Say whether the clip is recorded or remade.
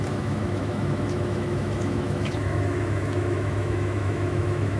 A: remade